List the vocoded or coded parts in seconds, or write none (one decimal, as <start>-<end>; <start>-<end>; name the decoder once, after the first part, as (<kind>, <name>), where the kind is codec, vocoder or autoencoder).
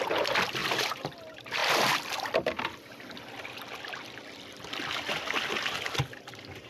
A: 0.6-1.1 (vocoder, BigVGAN v2)